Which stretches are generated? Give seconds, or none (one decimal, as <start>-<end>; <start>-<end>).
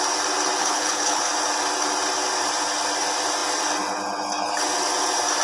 0.6-1.2